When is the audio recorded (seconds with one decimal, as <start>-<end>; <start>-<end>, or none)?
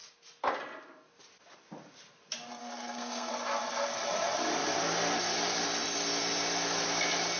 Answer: 0.0-2.6; 3.3-7.4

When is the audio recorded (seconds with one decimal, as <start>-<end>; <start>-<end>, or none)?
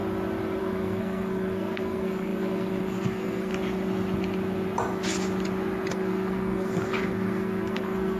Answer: 0.0-0.6; 3.5-5.9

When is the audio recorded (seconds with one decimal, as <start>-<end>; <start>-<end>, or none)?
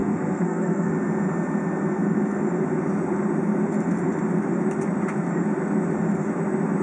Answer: 0.9-6.8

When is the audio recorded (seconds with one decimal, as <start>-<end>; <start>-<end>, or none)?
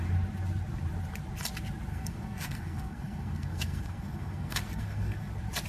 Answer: 0.0-1.9; 5.3-5.7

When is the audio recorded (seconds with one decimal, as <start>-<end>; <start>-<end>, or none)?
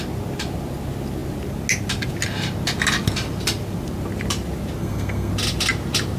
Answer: 0.0-4.8; 5.3-6.2